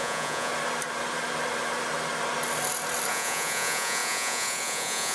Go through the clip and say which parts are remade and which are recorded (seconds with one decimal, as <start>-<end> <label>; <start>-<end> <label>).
0.0-0.5 remade; 0.5-3.1 recorded; 3.1-5.1 remade